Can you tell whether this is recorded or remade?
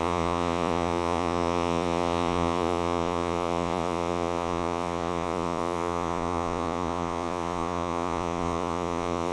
remade